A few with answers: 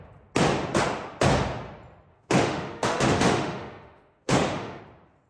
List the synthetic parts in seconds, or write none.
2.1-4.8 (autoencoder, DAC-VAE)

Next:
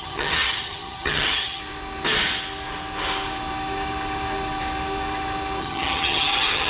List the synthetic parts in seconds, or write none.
0.0-1.6 (vocoder, HiFi-GAN); 5.6-6.7

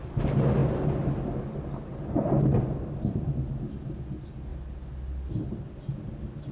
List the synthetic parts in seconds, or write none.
none

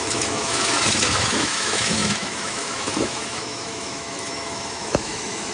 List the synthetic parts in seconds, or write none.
0.0-5.5 (autoencoder, DAC-VAE)